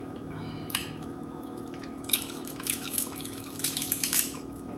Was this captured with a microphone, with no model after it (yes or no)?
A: no